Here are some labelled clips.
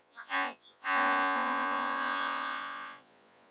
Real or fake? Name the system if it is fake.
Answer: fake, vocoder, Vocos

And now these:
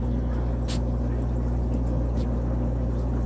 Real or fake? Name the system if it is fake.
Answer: real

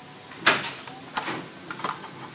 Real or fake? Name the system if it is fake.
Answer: real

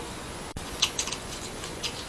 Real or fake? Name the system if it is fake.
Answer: fake, vocoder, Vocos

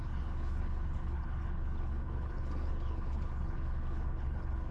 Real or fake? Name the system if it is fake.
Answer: fake, codec, HILCodec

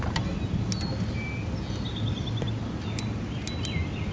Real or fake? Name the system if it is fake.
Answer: real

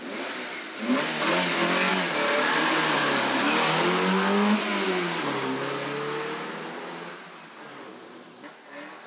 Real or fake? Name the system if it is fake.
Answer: real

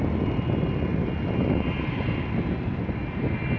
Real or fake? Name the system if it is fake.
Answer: real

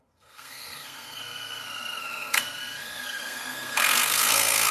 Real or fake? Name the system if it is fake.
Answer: fake, codec, SNAC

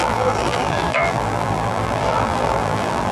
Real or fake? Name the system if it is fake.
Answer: fake, vocoder, BigVGAN v2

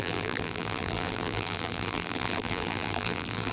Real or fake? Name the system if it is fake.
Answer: fake, vocoder, BigVGAN v2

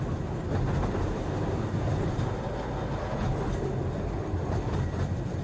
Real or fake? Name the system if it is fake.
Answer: real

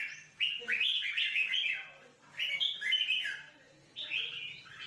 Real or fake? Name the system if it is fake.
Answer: real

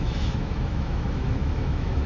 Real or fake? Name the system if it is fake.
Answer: fake, autoencoder, DAC-VAE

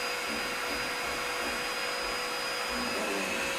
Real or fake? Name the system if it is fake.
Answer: real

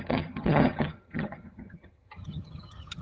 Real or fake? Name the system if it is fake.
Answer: fake, vocoder, HiFi-GAN